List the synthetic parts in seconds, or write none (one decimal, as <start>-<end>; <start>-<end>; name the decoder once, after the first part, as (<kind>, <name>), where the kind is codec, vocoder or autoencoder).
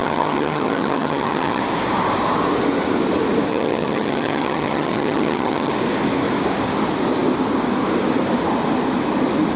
0.0-1.6 (vocoder, HiFi-GAN); 3.5-5.7